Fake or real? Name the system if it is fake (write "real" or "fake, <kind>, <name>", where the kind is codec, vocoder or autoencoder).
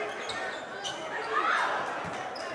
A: real